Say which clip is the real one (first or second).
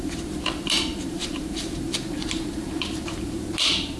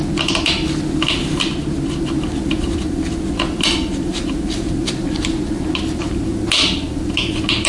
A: second